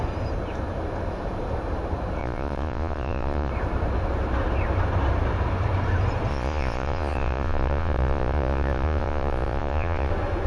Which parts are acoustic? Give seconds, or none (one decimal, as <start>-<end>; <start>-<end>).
0.0-2.2; 3.5-6.3; 10.1-10.5